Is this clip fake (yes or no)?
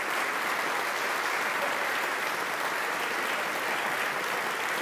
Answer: no